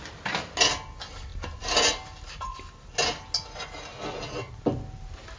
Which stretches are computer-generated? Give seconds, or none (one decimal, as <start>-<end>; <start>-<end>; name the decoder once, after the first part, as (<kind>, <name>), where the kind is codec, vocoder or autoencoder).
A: none